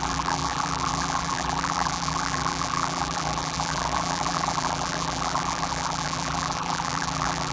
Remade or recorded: remade